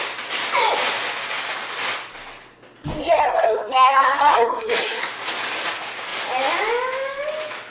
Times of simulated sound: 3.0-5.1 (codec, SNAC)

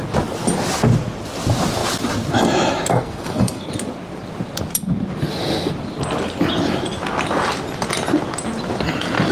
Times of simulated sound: 2.9-3.7 (codec, SNAC)